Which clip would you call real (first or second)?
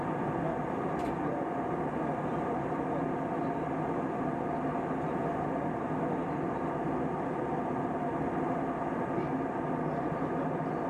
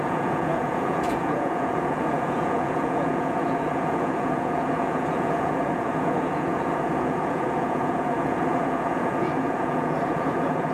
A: first